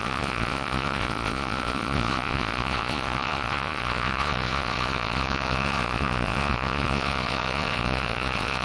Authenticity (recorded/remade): remade